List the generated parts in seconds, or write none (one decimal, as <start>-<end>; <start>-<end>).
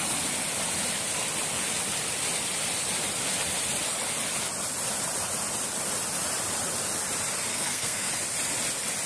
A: 7.5-8.1